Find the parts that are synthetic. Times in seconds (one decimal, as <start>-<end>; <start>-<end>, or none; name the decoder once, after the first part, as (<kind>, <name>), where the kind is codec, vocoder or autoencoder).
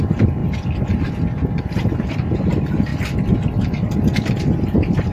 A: 0.0-0.4 (vocoder, BigVGAN v2); 1.6-2.9; 4.4-5.1